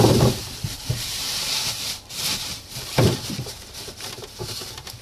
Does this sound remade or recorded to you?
remade